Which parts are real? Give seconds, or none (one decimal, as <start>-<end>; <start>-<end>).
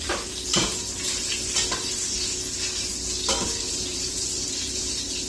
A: 0.5-3.7